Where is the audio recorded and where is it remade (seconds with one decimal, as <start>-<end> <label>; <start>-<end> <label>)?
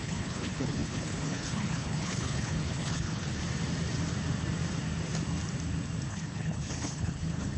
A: 0.0-3.4 remade; 3.4-6.1 recorded; 6.1-7.6 remade